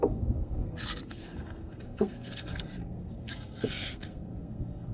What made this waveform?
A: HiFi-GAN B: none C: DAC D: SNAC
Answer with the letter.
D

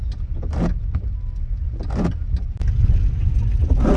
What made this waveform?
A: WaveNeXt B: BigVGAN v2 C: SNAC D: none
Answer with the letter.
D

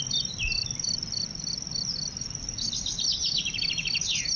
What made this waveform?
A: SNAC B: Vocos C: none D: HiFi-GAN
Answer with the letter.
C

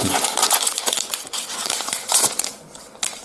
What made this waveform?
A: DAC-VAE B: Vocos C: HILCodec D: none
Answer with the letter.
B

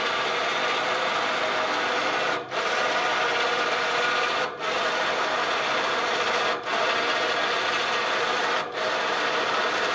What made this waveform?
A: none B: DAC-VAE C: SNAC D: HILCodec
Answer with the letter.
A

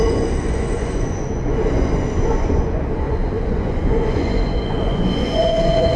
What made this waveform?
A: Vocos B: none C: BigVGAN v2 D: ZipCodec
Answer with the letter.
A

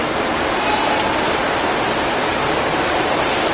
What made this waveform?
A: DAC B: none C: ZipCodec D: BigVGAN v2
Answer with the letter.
D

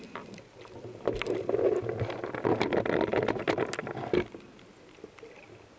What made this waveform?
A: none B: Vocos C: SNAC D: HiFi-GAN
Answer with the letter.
A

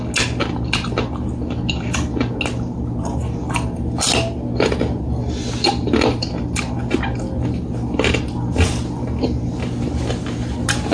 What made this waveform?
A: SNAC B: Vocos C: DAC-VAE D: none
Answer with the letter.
D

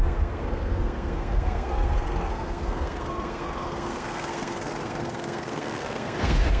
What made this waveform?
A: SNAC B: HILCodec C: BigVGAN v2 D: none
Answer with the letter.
A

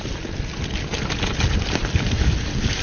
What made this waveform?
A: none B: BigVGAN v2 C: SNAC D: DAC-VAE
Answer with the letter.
A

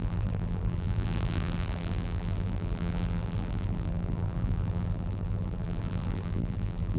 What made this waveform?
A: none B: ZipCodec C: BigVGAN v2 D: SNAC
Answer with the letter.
C